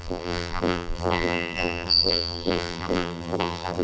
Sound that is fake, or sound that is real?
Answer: fake